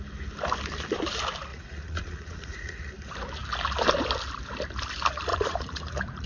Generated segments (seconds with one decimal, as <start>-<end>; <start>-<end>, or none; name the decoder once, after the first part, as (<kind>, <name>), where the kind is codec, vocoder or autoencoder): 1.5-2.9 (vocoder, Vocos); 5.3-6.3